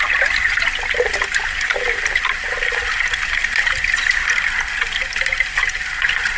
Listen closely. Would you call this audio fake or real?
real